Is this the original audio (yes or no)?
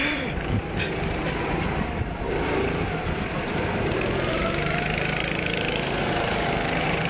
no